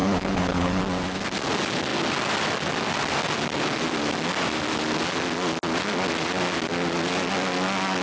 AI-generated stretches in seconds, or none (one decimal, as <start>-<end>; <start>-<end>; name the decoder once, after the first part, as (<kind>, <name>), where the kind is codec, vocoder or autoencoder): 0.0-0.8 (codec, HILCodec)